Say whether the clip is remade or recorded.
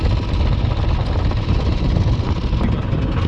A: recorded